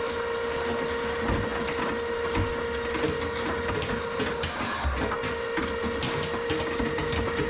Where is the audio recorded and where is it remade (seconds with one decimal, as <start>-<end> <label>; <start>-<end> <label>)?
0.0-7.5 recorded